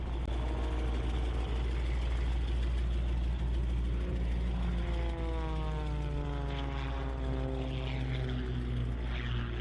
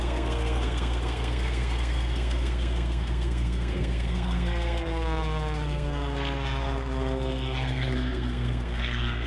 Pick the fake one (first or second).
second